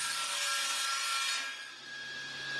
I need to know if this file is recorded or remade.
recorded